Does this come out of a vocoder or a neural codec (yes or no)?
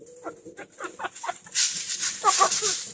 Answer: no